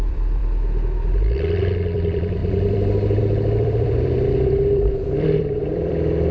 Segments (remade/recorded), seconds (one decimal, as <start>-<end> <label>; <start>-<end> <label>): 0.0-0.4 remade; 0.4-1.4 recorded; 1.4-6.3 remade